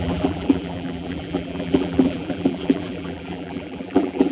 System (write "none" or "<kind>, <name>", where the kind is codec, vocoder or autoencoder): vocoder, BigVGAN v2